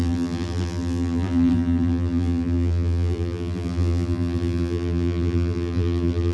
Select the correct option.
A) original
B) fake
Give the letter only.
B